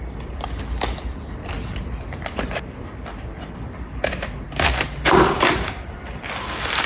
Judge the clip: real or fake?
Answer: fake